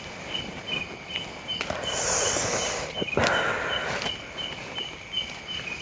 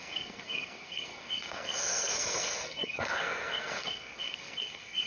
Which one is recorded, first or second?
first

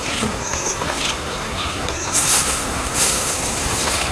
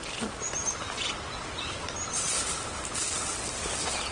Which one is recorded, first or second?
second